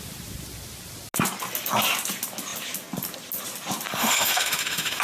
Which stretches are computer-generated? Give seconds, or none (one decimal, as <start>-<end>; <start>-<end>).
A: 4.0-5.0